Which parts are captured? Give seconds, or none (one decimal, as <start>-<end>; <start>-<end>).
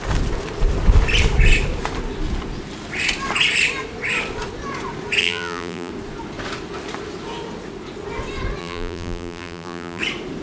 0.0-5.2; 5.9-8.6; 10.0-10.4